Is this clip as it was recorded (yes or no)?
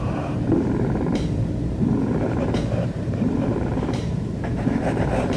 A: no